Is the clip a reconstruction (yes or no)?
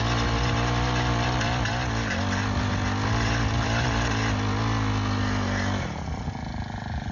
no